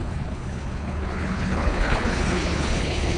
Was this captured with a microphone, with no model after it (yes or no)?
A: no